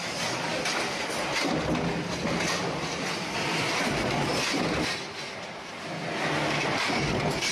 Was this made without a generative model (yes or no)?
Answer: yes